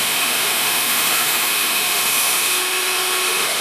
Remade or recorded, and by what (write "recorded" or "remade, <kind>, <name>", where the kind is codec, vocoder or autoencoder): remade, autoencoder, DAC-VAE